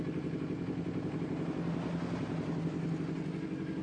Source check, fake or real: real